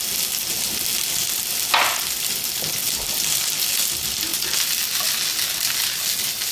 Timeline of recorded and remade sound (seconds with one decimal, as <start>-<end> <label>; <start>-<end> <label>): 0.0-6.5 recorded